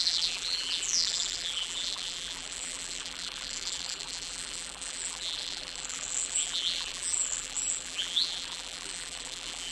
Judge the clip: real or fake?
fake